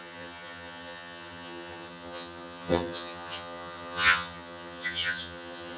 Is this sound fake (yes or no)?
yes